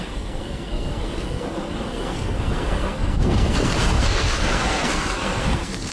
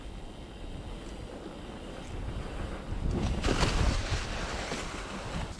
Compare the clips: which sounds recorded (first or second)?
second